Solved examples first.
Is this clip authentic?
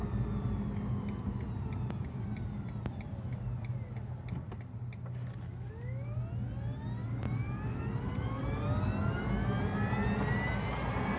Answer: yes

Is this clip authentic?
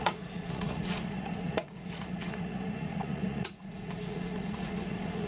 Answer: no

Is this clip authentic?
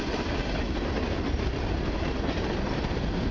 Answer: yes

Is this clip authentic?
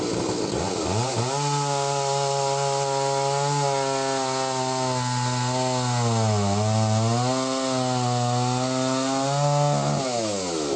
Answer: yes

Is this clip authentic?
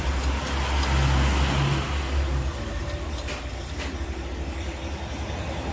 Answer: yes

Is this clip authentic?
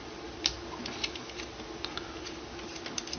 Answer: yes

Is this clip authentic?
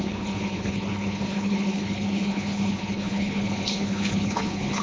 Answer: no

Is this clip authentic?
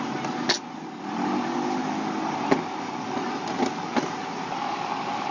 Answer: yes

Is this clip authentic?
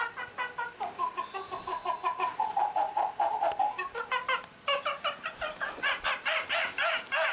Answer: yes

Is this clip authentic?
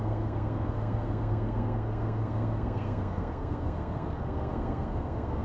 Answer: no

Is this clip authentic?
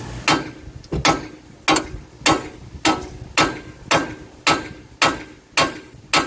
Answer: yes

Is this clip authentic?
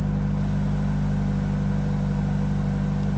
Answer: yes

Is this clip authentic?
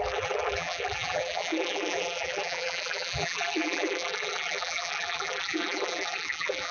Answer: no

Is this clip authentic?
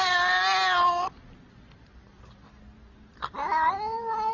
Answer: yes